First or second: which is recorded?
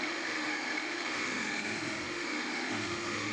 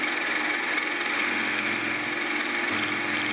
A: second